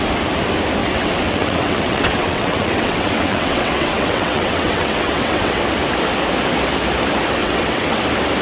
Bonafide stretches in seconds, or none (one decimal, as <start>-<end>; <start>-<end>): 0.0-0.8; 5.6-7.4; 8.0-8.4